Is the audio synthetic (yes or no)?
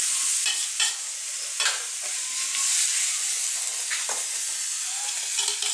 no